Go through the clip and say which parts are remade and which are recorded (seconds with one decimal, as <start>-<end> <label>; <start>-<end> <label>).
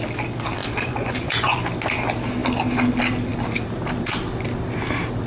0.0-0.6 recorded; 0.6-1.6 remade; 1.6-5.3 recorded